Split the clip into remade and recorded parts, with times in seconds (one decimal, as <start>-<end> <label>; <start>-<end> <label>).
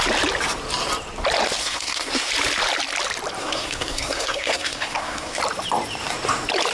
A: 0.0-1.6 recorded; 1.6-2.3 remade; 2.3-3.4 recorded; 3.4-5.4 remade; 5.4-6.7 recorded